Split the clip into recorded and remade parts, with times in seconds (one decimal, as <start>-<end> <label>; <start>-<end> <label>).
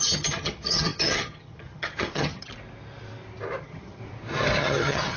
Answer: 0.0-2.5 remade; 2.5-3.6 recorded; 3.6-4.0 remade; 4.0-4.6 recorded; 4.6-5.2 remade